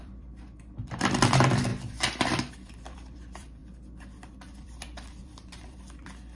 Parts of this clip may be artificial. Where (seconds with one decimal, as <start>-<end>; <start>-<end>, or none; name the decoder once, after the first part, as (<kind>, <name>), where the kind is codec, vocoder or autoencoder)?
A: 0.0-3.6 (vocoder, BigVGAN v2); 4.6-6.3